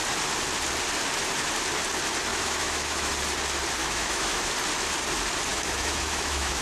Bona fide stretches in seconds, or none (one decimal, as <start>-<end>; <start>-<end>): 0.0-2.3; 3.1-3.8; 4.5-5.5